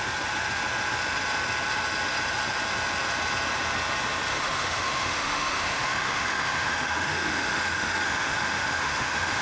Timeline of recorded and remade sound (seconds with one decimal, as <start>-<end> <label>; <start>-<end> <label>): 0.0-4.3 recorded; 4.3-9.4 remade